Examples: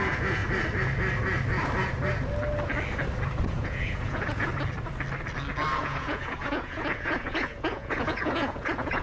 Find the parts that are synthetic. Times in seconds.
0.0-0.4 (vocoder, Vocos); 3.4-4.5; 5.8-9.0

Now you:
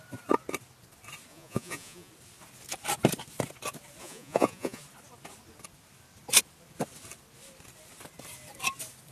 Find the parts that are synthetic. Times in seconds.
1.3-2.1 (vocoder, Vocos); 4.0-4.8

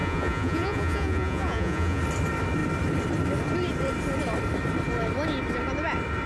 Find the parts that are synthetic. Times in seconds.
0.0-2.0 (vocoder, Vocos)

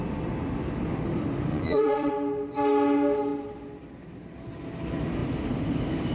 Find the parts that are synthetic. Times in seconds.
1.5-2.1 (vocoder, Vocos)

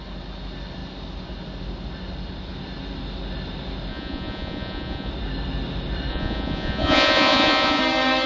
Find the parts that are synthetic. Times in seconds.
3.9-5.1 (vocoder, Vocos); 6.1-7.8

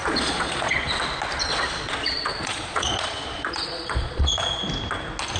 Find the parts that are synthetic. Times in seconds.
0.0-0.9 (vocoder, Vocos); 1.4-4.6

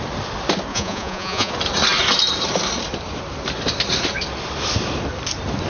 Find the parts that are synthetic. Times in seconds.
0.7-1.5 (vocoder, Vocos)

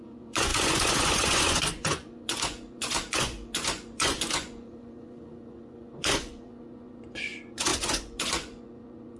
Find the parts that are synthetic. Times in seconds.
0.0-9.2 (vocoder, Vocos)